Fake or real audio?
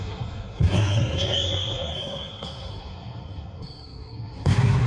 fake